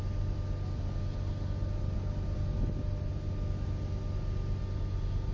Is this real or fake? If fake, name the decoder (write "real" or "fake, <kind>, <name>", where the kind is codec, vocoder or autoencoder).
real